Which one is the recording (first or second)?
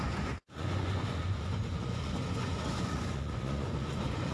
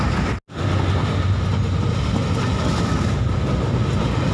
second